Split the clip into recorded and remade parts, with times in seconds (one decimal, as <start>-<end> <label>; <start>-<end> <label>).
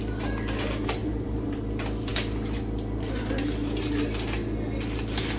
0.0-1.0 recorded; 1.0-1.6 remade; 1.6-5.4 recorded